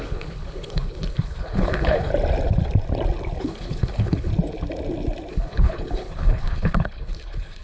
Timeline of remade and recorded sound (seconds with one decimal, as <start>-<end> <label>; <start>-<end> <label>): 0.0-2.1 remade; 2.1-3.4 recorded; 3.4-4.3 remade; 4.3-5.3 recorded; 5.3-7.6 remade